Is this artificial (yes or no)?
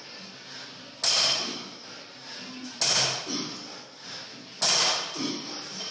no